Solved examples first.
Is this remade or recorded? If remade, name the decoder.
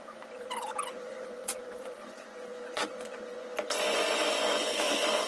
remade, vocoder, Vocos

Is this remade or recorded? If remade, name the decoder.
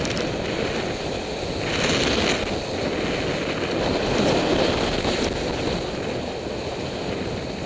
recorded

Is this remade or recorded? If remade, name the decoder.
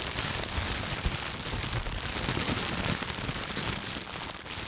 recorded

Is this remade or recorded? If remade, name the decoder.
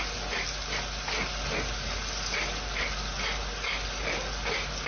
recorded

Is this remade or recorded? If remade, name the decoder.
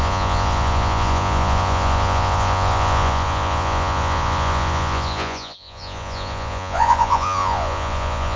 remade, vocoder, Vocos